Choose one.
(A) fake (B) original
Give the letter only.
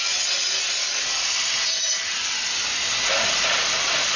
B